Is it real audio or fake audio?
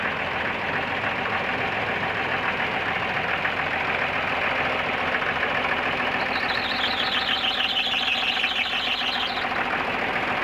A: real